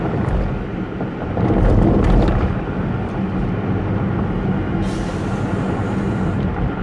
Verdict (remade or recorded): recorded